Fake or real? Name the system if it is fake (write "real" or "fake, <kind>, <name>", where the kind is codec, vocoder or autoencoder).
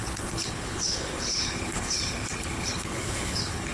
fake, codec, HILCodec